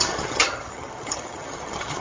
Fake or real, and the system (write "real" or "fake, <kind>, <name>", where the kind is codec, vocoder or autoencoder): fake, vocoder, HiFi-GAN